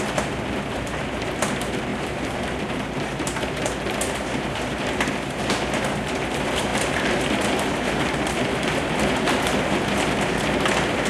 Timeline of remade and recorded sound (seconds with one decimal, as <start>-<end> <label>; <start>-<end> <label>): 0.0-11.1 remade